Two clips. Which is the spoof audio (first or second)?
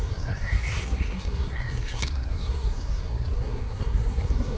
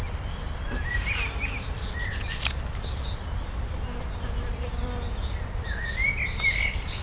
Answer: first